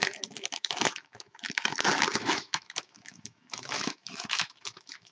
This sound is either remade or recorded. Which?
remade